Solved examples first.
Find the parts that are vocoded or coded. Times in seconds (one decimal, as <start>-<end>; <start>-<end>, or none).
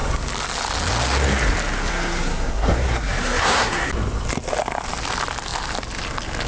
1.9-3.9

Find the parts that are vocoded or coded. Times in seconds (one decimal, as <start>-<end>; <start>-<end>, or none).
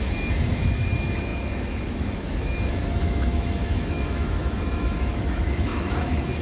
0.0-6.4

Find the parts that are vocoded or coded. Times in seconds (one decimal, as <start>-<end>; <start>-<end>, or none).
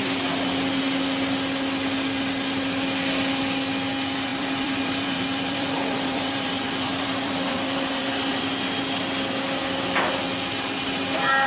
4.3-8.5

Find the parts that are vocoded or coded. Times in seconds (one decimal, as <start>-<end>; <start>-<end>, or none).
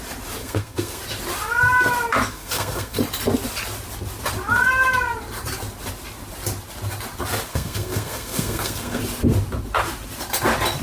0.4-1.0; 2.3-3.0; 7.5-9.0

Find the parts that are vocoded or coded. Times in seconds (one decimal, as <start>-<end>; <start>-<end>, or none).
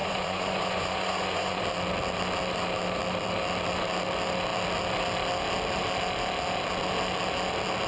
0.0-1.6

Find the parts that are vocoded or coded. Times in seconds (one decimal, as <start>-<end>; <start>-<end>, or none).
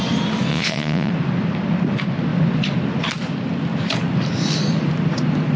0.5-1.1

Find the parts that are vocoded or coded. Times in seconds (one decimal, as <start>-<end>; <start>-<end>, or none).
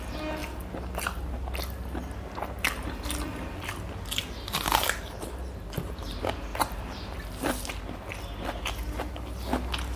0.4-3.8; 6.5-7.7